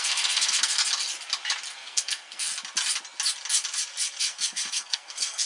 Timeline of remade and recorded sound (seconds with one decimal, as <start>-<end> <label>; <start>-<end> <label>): 0.0-0.8 remade; 0.8-1.7 recorded; 1.7-2.5 remade; 2.5-4.2 recorded; 4.2-5.5 remade